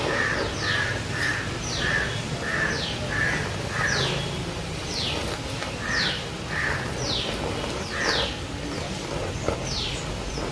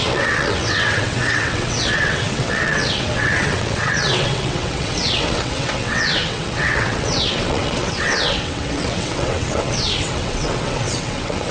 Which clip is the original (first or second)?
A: first